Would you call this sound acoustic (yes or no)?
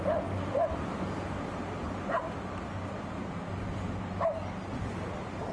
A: yes